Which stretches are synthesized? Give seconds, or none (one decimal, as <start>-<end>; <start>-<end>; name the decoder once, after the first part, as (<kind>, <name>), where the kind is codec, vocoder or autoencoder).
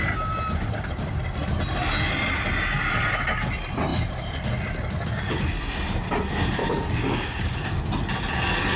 6.6-7.8 (codec, DAC)